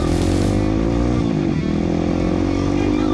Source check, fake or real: real